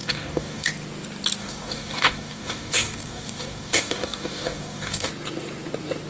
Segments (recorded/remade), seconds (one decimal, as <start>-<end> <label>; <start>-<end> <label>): 0.0-0.7 remade; 0.7-1.4 recorded; 1.4-5.1 remade; 5.1-6.1 recorded